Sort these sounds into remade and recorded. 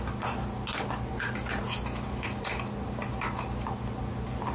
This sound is recorded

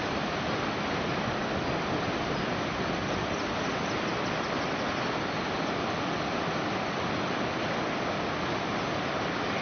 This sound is recorded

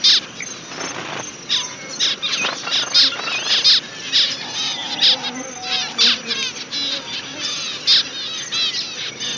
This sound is recorded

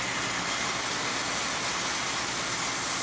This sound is recorded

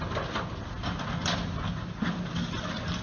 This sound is recorded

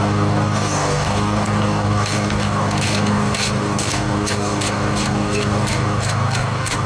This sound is remade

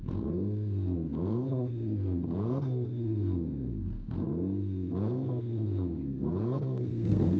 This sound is remade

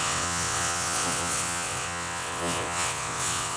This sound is remade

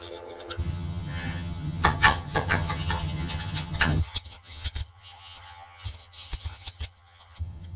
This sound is remade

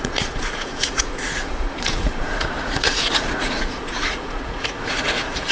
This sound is remade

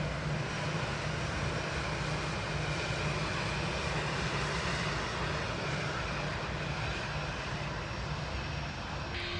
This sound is recorded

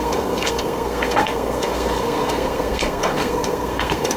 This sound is remade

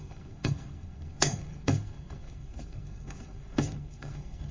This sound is remade